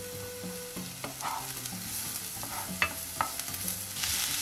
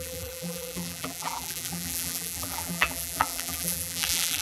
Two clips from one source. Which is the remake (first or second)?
second